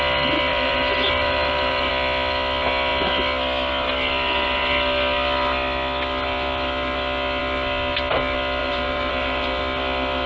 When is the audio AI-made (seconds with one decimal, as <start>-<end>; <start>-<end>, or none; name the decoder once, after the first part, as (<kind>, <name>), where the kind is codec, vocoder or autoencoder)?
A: 0.5-1.9 (vocoder, BigVGAN v2); 8.6-9.6